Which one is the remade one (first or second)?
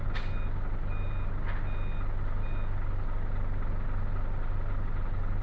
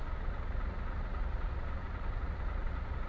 second